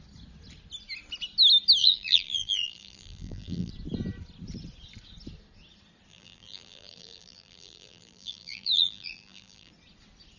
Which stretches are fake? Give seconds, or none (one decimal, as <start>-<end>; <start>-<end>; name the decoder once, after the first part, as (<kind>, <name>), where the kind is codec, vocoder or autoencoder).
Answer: 1.8-3.7 (vocoder, BigVGAN v2); 6.1-9.7